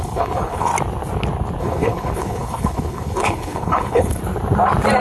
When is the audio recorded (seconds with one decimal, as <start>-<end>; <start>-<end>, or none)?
0.7-1.6; 4.2-5.0